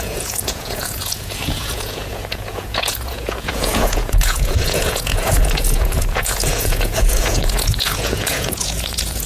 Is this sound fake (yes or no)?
yes